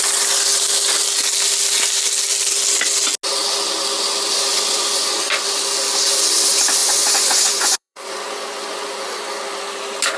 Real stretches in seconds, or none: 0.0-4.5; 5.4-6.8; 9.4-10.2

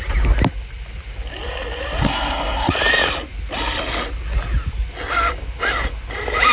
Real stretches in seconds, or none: 0.0-2.0; 2.7-6.5

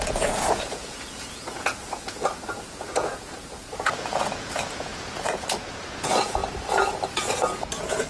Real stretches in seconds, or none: 6.4-7.1

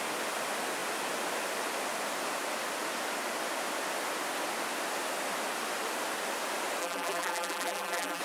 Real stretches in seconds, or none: 0.0-6.8

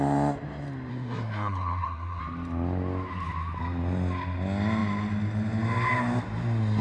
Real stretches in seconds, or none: 0.0-0.9; 2.2-6.8

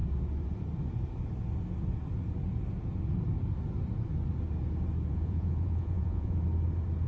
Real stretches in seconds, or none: 0.0-5.1; 6.4-7.1

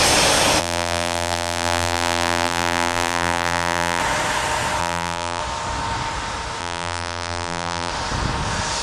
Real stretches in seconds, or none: 0.0-0.6; 4.0-4.8; 5.4-6.6; 7.9-8.8